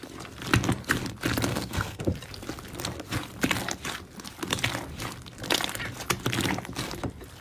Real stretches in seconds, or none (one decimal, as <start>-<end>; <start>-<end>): 0.0-1.5; 2.0-7.4